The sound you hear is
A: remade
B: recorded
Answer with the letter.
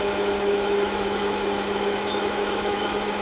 A